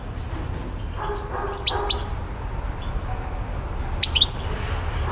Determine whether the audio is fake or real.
real